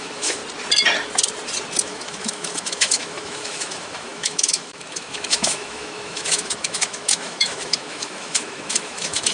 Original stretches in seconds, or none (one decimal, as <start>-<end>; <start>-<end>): 0.4-1.8